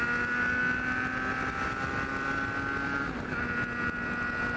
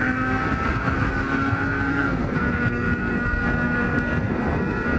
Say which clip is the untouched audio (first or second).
first